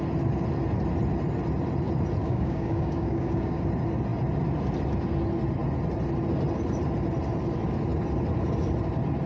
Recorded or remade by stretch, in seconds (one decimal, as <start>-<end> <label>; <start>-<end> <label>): 0.0-2.2 recorded; 2.2-3.6 remade; 3.6-9.3 recorded